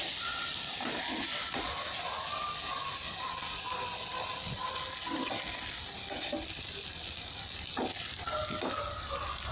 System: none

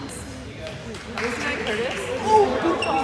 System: none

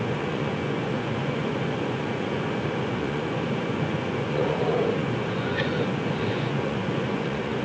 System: vocoder, Vocos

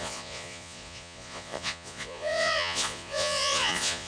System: vocoder, Vocos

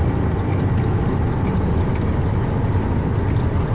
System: none